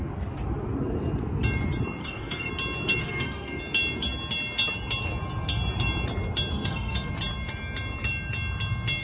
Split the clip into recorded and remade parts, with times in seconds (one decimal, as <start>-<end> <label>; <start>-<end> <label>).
0.0-2.0 recorded; 2.0-2.5 remade; 2.5-3.0 recorded; 3.0-3.6 remade; 3.6-6.5 recorded; 6.5-7.1 remade; 7.1-9.0 recorded